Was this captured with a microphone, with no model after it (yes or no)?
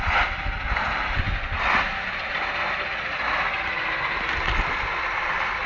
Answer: yes